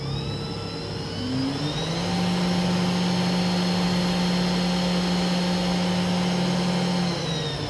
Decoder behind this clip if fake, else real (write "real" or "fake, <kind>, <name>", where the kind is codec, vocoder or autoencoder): real